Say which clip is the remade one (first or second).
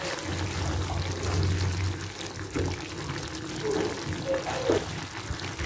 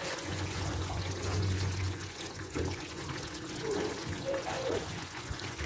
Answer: second